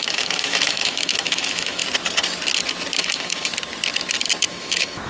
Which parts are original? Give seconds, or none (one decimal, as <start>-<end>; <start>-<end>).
1.8-3.0; 3.5-4.5

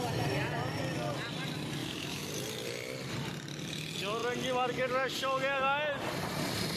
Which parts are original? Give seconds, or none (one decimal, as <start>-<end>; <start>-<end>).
0.0-1.8; 2.3-6.8

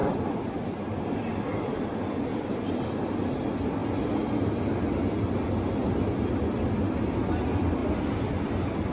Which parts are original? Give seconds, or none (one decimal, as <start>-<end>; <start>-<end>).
0.0-8.9